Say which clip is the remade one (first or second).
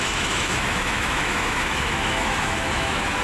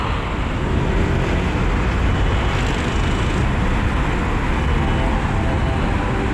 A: first